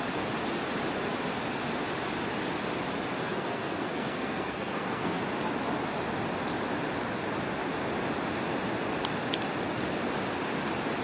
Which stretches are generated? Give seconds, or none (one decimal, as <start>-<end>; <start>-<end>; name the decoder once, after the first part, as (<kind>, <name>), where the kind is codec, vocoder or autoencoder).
3.2-5.2 (codec, SNAC)